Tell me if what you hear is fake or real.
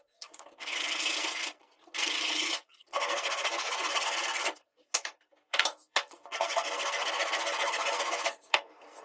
fake